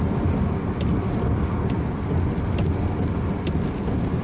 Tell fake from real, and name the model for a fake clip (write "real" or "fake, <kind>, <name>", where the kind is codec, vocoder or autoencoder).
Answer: real